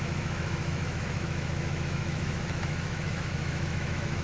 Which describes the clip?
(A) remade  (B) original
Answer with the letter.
A